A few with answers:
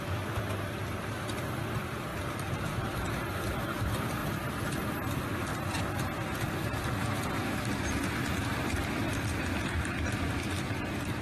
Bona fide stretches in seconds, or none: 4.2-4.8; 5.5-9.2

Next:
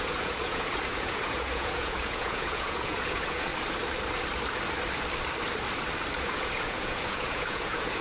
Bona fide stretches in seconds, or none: 3.5-6.2

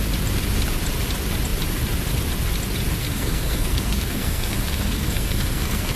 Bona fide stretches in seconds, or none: 0.0-3.0

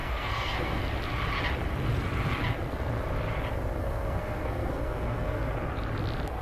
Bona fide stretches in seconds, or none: 0.8-3.8; 5.5-6.4

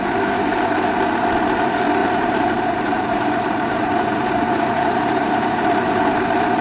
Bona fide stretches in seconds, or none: 0.0-2.0; 6.0-6.6

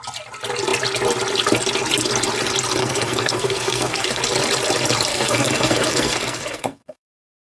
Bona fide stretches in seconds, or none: 0.0-2.8; 4.2-5.1

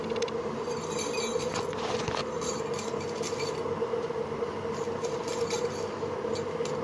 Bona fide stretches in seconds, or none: 0.0-6.8